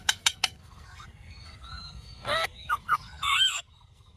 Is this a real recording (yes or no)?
no